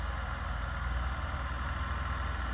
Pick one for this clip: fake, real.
real